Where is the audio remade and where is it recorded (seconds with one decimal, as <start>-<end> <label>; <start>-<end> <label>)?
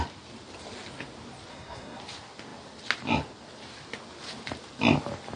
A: 0.0-1.5 recorded; 1.5-2.0 remade; 2.0-5.4 recorded